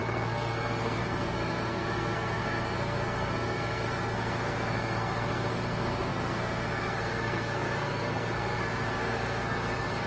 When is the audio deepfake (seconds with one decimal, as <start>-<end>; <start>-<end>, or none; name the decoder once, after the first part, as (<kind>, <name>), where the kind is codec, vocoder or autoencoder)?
0.0-10.1 (codec, SNAC)